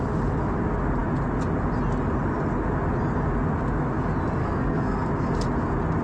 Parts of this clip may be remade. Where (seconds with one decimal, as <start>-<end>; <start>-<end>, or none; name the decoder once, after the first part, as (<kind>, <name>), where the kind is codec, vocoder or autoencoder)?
4.4-5.1 (codec, SNAC)

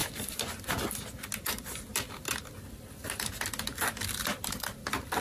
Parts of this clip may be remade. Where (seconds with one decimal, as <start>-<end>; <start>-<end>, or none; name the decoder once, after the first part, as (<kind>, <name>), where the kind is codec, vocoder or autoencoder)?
none

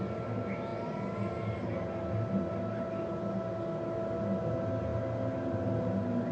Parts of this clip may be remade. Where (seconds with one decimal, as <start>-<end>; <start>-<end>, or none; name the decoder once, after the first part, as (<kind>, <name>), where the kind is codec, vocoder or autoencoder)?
none

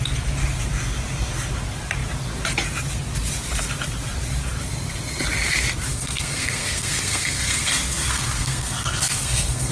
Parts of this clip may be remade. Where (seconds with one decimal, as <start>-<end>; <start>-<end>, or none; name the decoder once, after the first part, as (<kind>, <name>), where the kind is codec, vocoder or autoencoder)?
5.9-9.7 (codec, SNAC)